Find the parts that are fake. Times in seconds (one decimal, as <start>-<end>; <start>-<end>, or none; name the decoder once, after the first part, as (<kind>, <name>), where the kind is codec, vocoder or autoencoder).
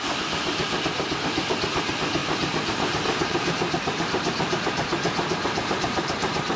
2.2-6.6 (vocoder, BigVGAN v2)